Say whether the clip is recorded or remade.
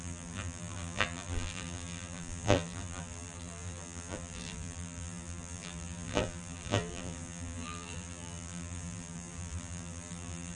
remade